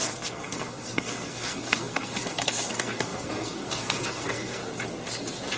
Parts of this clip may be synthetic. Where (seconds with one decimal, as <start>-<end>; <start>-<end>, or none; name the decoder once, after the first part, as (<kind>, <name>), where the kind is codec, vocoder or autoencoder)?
0.0-4.6 (codec, SNAC)